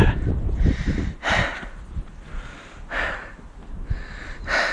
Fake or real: real